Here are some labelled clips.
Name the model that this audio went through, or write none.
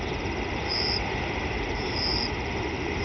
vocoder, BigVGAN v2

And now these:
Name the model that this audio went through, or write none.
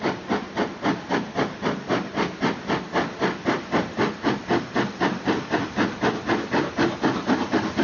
none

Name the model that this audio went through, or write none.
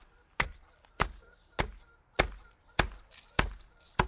none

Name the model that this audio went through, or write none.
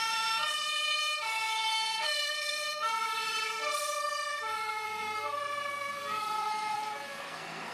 codec, SNAC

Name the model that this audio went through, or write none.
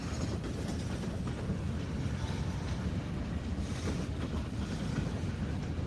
none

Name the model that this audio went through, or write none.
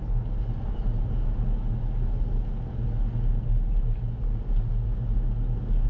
none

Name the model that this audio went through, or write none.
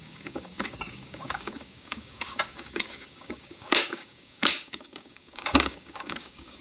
codec, DAC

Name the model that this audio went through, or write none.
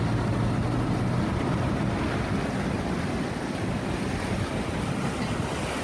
none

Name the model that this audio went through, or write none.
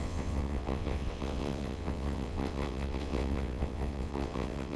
vocoder, WaveNeXt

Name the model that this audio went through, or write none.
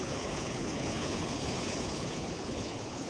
codec, HILCodec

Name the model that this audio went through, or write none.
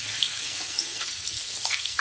codec, SNAC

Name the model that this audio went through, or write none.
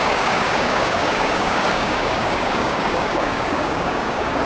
codec, DAC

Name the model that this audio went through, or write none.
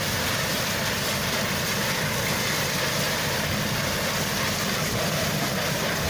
vocoder, BigVGAN v2